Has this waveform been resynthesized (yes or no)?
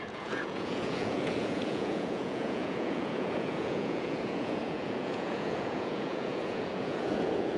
yes